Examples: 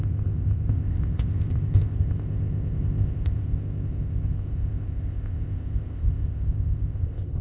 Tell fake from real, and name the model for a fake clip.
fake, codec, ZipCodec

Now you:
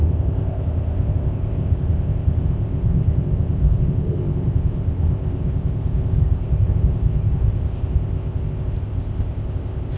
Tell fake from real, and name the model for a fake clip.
fake, codec, ZipCodec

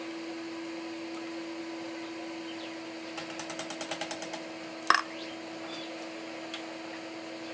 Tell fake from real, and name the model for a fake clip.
real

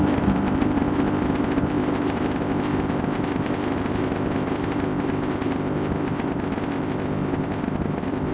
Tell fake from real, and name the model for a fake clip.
fake, codec, ZipCodec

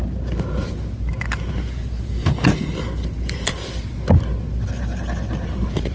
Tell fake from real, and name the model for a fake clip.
real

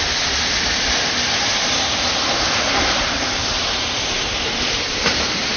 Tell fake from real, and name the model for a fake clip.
real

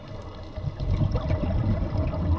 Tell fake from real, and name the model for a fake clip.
real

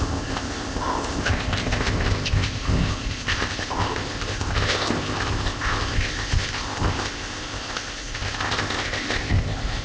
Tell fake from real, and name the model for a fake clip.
fake, codec, ZipCodec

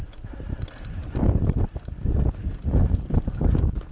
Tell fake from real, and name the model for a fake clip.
real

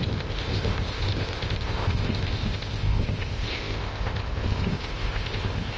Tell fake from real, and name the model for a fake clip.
fake, codec, ZipCodec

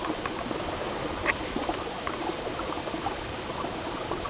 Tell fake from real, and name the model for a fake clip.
real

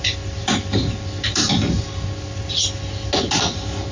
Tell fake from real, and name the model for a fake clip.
real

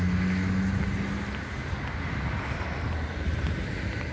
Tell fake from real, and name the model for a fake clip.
real